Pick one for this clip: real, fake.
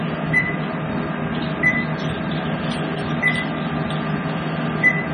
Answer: real